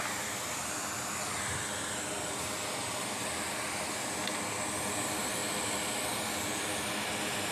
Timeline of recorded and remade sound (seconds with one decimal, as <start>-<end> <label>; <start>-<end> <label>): 0.0-7.5 recorded